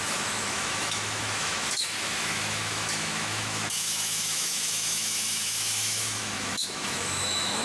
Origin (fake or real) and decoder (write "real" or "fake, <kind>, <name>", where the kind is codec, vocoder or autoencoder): fake, autoencoder, DAC-VAE